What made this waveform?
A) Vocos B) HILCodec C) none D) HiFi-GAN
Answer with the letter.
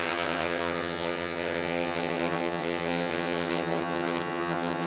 D